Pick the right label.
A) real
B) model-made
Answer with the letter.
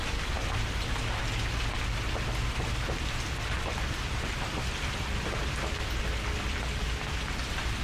A